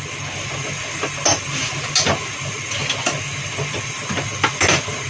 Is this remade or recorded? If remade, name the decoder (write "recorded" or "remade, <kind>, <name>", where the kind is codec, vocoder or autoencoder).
recorded